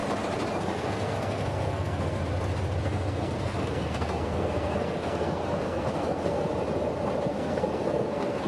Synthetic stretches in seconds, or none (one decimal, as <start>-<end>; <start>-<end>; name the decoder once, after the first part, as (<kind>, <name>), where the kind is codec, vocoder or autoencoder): 0.5-2.2 (codec, SNAC); 2.8-6.5; 7.3-8.5